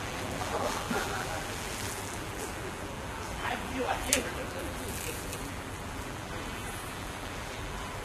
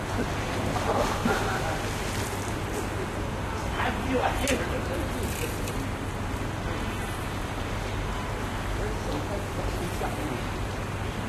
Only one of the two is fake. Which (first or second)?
first